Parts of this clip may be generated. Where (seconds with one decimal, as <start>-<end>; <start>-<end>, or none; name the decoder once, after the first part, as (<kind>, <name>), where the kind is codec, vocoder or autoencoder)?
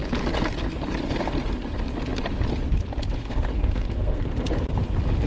3.2-4.2 (codec, SNAC)